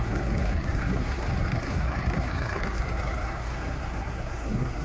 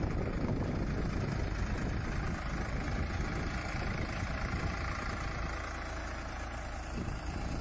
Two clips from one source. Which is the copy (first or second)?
first